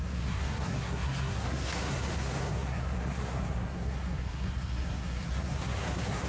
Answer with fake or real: fake